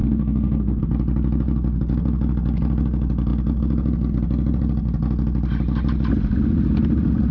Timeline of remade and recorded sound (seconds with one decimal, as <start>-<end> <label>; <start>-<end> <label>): 0.0-0.8 remade; 0.8-7.3 recorded